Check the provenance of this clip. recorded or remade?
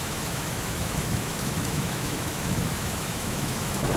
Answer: remade